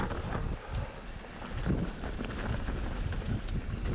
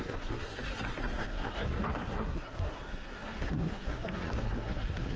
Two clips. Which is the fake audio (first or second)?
second